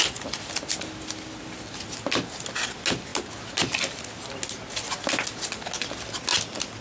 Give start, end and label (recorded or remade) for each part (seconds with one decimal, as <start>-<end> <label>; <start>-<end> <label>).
0.0-6.8 recorded